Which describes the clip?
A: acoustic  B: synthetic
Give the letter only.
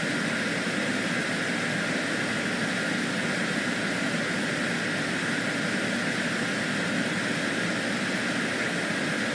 A